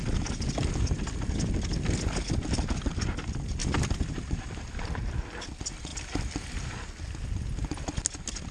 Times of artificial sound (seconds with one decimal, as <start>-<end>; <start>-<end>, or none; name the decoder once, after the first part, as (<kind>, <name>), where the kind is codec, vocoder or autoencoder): 3.6-5.5 (vocoder, BigVGAN v2)